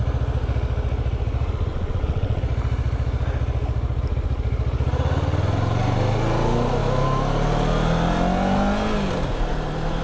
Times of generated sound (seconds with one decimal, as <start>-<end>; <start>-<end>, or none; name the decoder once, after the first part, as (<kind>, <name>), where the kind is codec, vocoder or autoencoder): 1.7-2.4 (vocoder, WaveNeXt)